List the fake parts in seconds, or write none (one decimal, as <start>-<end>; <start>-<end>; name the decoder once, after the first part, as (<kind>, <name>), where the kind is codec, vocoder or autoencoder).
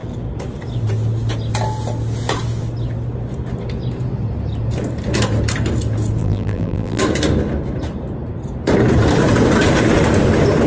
6.2-7.0 (vocoder, BigVGAN v2)